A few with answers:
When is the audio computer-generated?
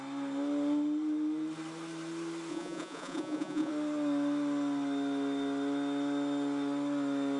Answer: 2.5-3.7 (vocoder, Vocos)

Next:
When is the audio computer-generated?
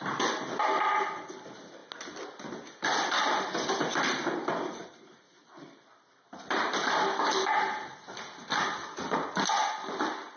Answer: none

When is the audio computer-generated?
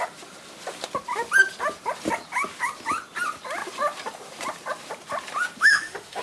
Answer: 5.6-6.2 (autoencoder, DAC-VAE)